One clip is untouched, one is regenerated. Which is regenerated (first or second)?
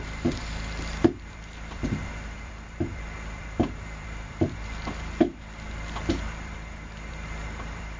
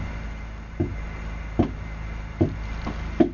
first